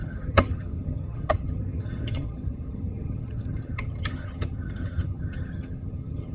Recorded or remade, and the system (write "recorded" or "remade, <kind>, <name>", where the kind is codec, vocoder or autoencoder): remade, vocoder, HiFi-GAN